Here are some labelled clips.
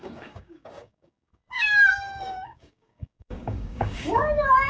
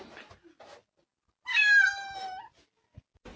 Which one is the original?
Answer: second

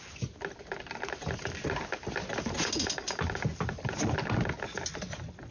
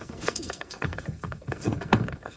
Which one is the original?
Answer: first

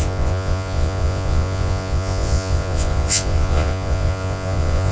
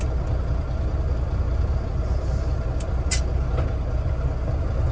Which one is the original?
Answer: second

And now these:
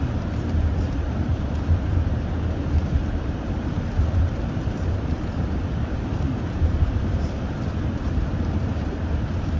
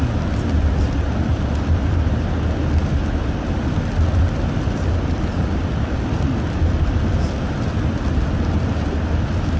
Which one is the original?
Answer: second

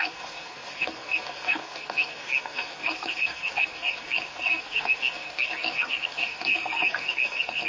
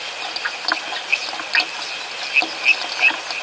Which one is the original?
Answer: second